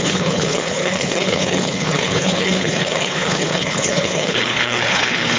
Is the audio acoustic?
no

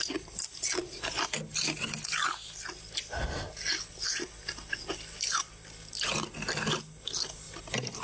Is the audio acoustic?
yes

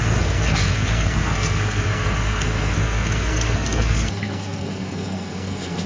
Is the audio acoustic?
no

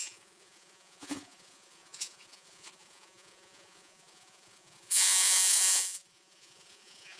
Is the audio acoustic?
no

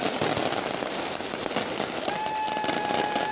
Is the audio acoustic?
yes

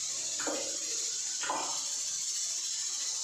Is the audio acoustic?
yes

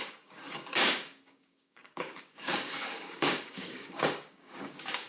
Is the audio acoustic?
no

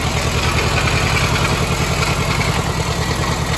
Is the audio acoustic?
yes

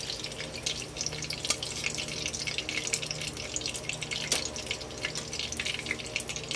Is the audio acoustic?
yes